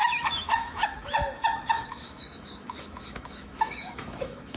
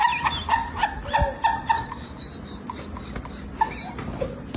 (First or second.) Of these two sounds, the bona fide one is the second